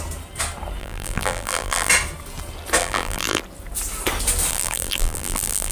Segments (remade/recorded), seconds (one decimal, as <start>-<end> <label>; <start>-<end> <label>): 0.0-0.8 recorded; 0.8-1.9 remade; 1.9-2.8 recorded; 2.8-3.4 remade; 3.4-4.5 recorded; 4.5-5.7 remade